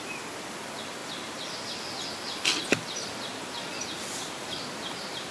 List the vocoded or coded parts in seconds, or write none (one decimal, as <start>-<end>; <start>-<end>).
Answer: none